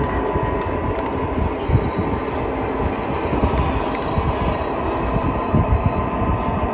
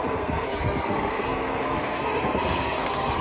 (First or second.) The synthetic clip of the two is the second